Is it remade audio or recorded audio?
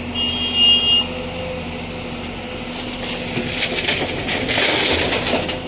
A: recorded